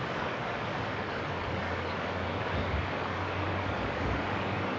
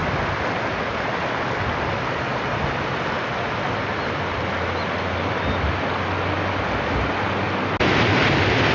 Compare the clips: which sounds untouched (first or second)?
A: second